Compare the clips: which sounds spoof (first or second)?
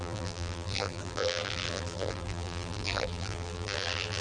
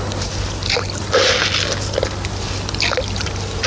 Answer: first